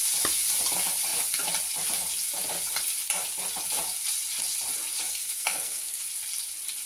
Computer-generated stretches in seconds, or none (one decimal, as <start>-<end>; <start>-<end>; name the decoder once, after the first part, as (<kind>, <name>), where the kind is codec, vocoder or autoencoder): 5.1-6.0 (codec, SNAC)